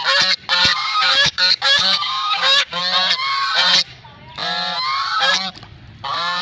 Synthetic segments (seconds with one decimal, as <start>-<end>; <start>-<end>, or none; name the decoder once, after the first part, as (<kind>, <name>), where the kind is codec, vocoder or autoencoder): 0.7-2.8 (codec, DAC)